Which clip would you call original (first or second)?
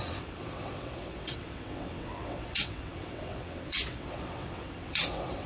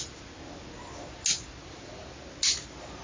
second